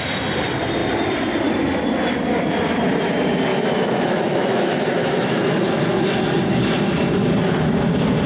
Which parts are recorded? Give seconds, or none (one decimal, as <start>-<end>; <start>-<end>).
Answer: 0.0-3.5; 5.4-8.3